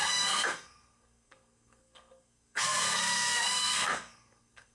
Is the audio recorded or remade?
remade